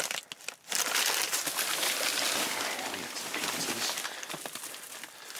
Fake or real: real